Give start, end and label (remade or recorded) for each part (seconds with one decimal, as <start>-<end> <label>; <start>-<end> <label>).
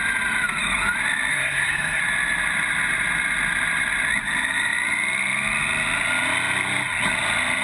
0.0-1.3 recorded; 1.3-2.0 remade; 2.0-7.6 recorded